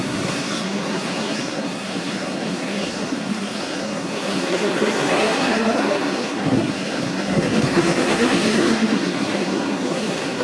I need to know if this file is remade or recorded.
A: remade